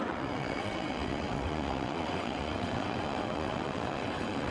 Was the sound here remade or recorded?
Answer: remade